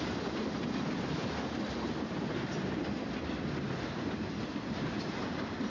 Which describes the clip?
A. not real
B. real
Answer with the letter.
B